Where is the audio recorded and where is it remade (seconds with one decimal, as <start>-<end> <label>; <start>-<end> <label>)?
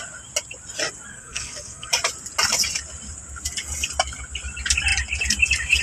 0.0-1.1 recorded; 1.1-1.9 remade; 1.9-5.8 recorded